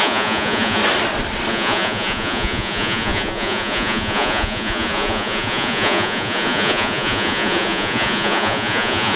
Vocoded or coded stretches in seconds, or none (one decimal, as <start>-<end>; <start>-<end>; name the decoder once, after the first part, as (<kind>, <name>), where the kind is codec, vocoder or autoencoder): 0.0-0.8 (vocoder, Vocos); 1.5-9.2